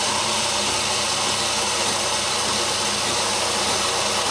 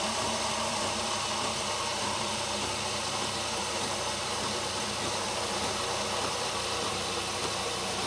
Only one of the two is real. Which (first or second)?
first